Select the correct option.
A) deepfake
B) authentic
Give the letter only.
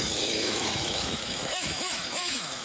A